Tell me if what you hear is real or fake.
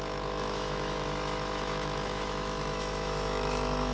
fake